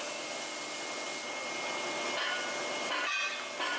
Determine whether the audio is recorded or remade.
recorded